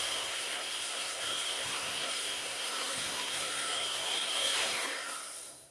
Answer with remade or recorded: remade